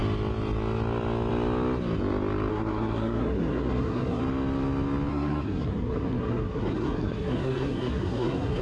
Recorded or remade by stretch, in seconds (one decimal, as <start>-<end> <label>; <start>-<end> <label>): 0.0-2.5 recorded; 2.5-4.2 remade; 4.2-5.1 recorded; 5.1-8.6 remade